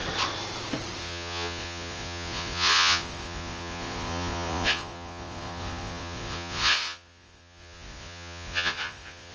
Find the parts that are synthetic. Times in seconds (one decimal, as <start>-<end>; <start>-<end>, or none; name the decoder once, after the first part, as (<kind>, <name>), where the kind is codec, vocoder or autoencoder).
1.0-9.3 (vocoder, Vocos)